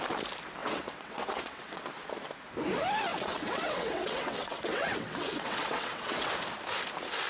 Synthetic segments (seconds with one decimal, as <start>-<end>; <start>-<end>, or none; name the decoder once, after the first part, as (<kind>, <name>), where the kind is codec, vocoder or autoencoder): 0.6-1.8 (vocoder, WaveNeXt); 3.1-6.3